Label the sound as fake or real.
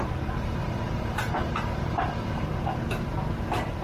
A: fake